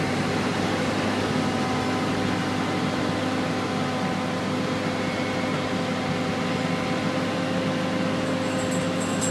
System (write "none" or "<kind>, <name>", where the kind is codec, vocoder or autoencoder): none